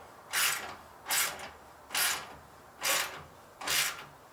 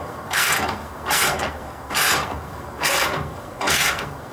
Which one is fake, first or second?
second